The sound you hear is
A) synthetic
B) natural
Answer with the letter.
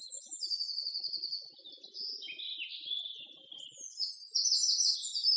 B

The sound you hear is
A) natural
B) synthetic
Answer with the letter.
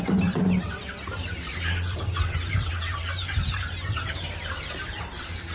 B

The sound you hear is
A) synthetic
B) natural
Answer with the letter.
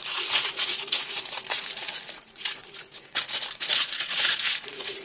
A